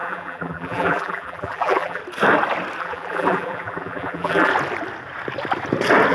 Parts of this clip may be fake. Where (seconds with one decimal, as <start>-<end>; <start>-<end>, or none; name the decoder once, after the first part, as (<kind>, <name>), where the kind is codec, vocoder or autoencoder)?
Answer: 0.0-2.0 (vocoder, BigVGAN v2); 2.8-4.5